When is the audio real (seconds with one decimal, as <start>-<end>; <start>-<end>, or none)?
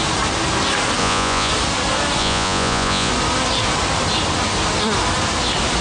0.0-1.0; 1.5-2.2; 3.1-5.8